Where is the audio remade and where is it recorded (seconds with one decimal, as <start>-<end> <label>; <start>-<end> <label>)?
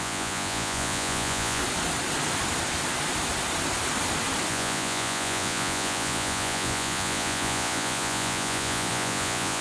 0.0-1.6 remade; 1.6-4.5 recorded; 4.5-9.6 remade